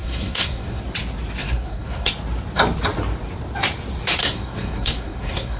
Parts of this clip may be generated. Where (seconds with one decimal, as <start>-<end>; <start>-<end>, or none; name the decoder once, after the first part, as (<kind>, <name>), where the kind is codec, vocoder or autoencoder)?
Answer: 0.0-0.8 (codec, SNAC); 1.4-2.1; 4.2-5.6